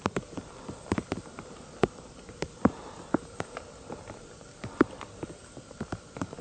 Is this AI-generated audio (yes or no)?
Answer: no